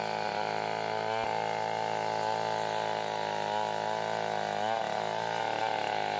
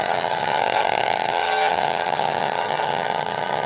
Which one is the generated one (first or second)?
second